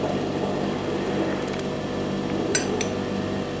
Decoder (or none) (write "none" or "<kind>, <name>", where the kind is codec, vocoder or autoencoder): none